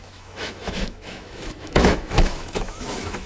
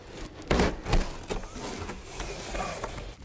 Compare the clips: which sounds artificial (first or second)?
first